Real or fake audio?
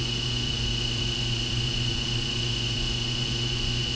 fake